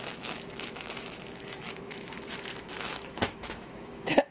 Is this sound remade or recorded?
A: remade